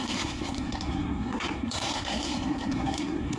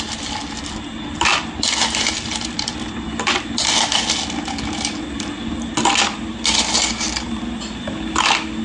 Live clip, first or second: second